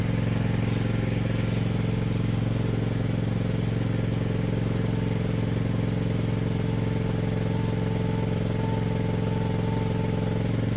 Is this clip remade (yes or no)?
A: no